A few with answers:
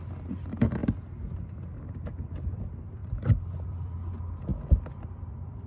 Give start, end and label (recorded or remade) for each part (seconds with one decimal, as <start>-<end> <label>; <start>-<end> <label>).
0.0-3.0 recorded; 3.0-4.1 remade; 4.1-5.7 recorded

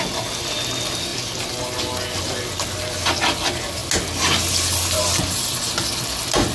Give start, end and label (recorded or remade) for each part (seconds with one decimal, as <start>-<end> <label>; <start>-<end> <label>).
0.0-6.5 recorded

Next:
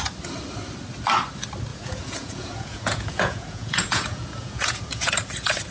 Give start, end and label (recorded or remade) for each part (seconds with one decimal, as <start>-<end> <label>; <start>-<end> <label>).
0.0-1.7 recorded; 1.7-5.1 remade; 5.1-5.7 recorded